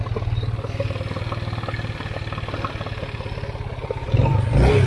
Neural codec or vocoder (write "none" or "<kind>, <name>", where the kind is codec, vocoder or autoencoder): none